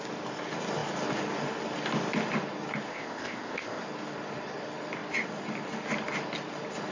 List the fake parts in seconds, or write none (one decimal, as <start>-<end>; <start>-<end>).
2.9-3.8